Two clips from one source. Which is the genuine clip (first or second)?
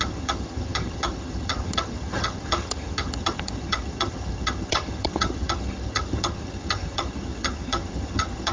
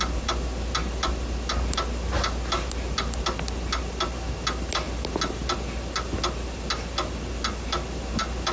second